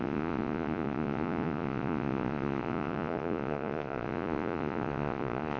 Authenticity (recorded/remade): remade